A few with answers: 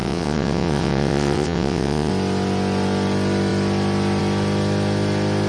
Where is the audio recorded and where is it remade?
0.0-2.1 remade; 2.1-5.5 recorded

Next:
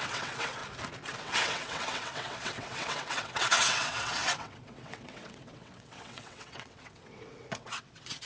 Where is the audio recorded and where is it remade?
0.0-0.6 remade; 0.6-1.2 recorded; 1.2-8.3 remade

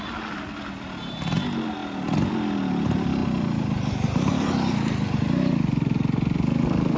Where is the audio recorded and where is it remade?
0.0-7.0 recorded

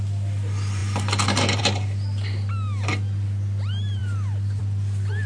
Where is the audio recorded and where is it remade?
0.0-5.3 recorded

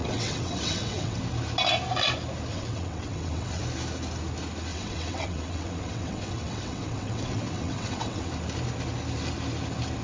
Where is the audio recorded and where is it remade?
0.0-1.2 remade; 1.2-2.5 recorded; 2.5-3.6 remade; 3.6-4.7 recorded; 4.7-8.3 remade; 8.3-10.0 recorded

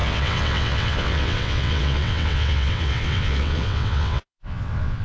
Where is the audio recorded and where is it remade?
0.0-5.0 remade

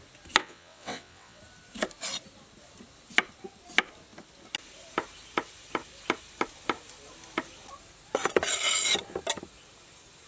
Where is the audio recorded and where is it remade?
0.0-0.4 recorded; 0.4-1.4 remade; 1.4-10.3 recorded